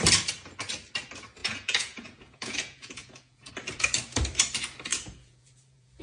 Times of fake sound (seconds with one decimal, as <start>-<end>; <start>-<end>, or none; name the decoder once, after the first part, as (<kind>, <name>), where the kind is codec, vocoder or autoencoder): 1.4-3.5 (vocoder, Vocos); 4.9-6.0